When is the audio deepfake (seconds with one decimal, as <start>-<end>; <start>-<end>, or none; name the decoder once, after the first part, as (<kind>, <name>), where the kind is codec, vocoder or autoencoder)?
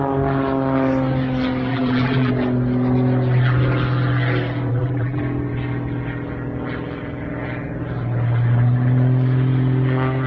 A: 1.7-2.3 (vocoder, BigVGAN v2); 4.7-5.2